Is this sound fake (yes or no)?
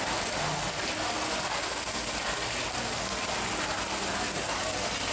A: no